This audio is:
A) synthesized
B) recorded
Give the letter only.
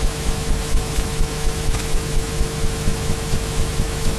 A